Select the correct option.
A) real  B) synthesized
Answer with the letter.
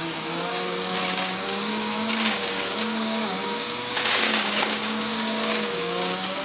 B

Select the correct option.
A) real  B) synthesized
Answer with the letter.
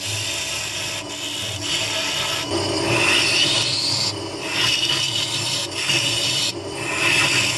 A